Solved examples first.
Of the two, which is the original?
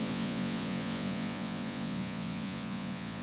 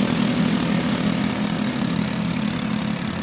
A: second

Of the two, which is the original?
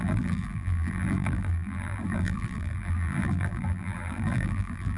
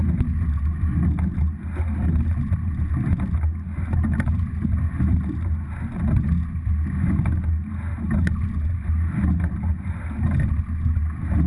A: second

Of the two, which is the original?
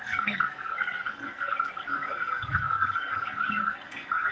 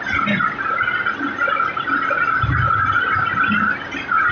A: second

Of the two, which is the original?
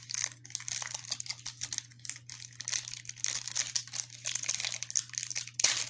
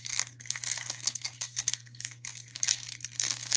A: first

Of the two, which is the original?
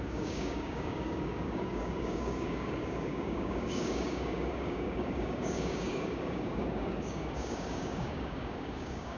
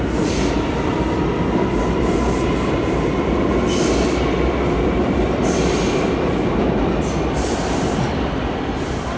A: second